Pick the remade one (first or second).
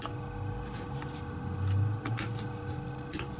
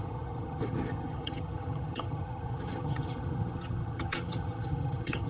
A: second